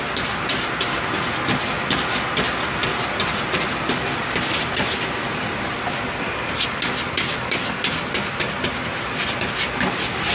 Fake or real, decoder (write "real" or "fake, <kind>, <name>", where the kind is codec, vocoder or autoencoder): real